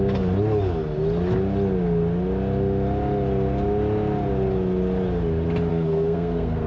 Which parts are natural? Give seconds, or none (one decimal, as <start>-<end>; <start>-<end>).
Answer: 0.0-5.7